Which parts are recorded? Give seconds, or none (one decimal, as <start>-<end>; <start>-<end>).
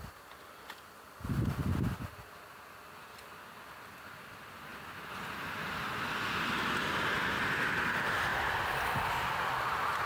0.0-10.1